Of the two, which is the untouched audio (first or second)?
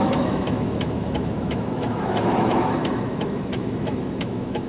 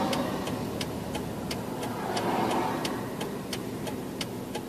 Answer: second